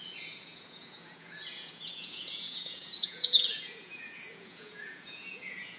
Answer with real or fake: fake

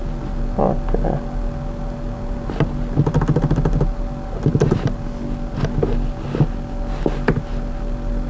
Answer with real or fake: real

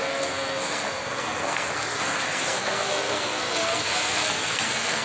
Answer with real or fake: fake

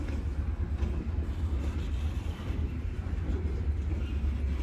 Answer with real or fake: real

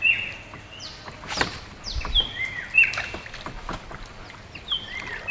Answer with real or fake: real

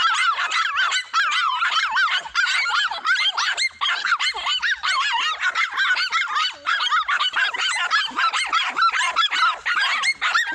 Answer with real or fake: real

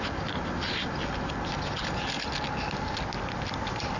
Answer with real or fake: real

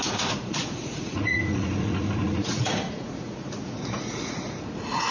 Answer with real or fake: fake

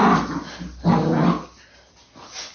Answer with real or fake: real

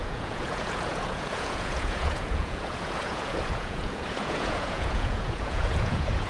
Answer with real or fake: fake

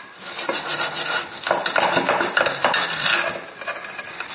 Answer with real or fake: real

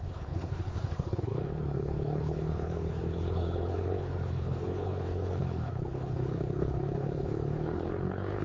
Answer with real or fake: fake